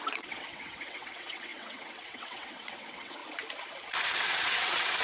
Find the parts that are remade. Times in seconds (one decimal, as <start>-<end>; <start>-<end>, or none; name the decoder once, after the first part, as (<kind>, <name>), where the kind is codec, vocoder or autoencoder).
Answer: 0.0-3.2 (vocoder, WaveNeXt); 4.2-5.0